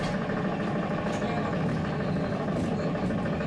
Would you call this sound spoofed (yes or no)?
no